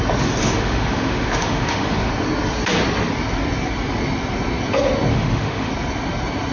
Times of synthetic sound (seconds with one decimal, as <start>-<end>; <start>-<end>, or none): 0.4-2.1; 5.1-5.7